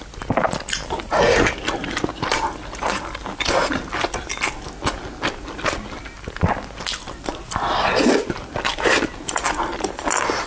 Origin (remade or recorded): recorded